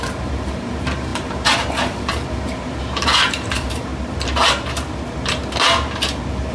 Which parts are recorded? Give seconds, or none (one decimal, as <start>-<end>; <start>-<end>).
3.9-6.5